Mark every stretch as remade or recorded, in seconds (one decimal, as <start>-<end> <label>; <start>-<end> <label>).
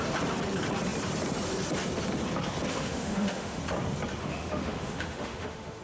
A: 0.0-2.7 recorded; 2.7-3.6 remade; 3.6-4.2 recorded; 4.2-5.8 remade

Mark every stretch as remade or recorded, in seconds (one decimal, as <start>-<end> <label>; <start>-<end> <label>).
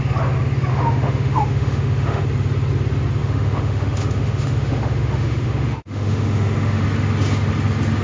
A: 0.0-0.7 recorded; 0.7-2.2 remade; 2.2-3.2 recorded; 3.2-6.8 remade; 6.8-8.0 recorded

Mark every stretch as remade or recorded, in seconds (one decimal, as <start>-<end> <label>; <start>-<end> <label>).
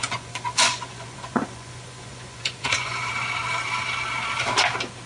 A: 0.0-3.1 remade; 3.1-5.1 recorded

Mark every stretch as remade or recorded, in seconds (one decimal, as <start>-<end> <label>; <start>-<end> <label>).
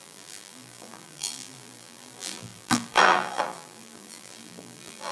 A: 0.0-5.1 remade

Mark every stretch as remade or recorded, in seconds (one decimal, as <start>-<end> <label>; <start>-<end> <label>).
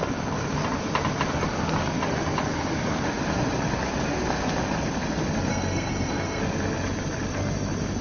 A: 0.0-5.5 recorded; 5.5-6.4 remade; 6.4-8.0 recorded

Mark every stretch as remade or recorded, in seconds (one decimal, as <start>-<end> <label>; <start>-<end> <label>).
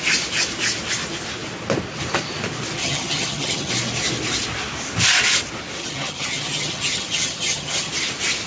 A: 0.0-2.8 recorded; 2.8-3.7 remade; 3.7-5.8 recorded; 5.8-7.9 remade; 7.9-8.5 recorded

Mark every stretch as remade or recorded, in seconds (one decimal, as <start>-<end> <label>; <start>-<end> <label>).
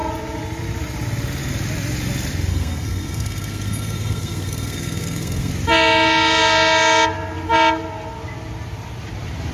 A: 0.0-2.5 recorded; 2.5-5.5 remade; 5.5-9.5 recorded